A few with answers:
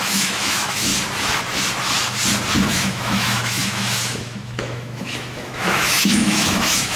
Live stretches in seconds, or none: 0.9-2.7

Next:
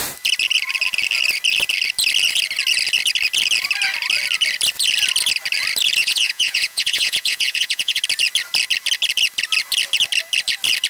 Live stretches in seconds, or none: 0.0-6.0; 8.0-10.9

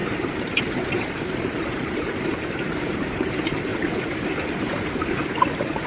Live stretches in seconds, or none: none

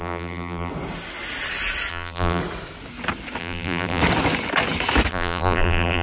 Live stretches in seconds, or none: 0.7-1.9; 2.4-3.4; 4.0-5.1

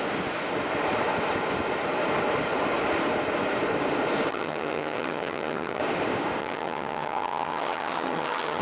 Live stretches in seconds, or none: 0.0-4.3; 5.8-6.4